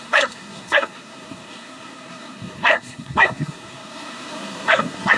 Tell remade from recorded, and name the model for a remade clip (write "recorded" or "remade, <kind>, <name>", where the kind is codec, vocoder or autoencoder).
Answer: remade, codec, SNAC